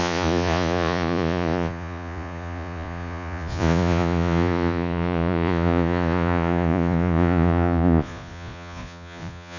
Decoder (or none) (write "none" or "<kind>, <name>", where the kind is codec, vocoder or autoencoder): vocoder, Vocos